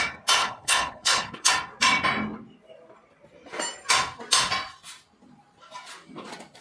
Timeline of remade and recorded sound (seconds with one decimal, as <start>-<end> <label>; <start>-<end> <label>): 0.0-0.4 recorded; 0.4-1.5 remade; 1.5-6.6 recorded